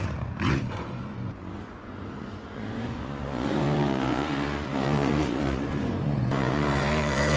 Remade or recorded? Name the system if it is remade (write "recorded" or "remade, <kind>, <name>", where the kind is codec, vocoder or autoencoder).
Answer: remade, vocoder, Vocos